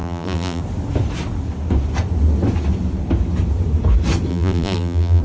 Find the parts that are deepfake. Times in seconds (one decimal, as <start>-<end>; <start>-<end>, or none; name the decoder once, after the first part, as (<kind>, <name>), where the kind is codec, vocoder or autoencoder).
0.0-0.6 (vocoder, BigVGAN v2); 4.3-5.2